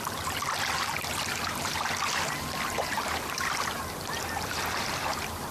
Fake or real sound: real